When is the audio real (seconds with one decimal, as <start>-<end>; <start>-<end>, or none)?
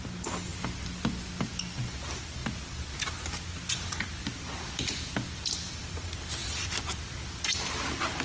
0.0-8.2